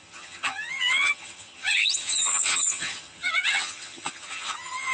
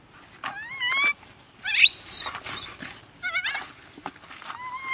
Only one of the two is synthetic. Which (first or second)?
first